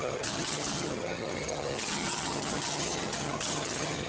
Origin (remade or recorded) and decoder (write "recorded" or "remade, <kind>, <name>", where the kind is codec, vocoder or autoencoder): remade, vocoder, HiFi-GAN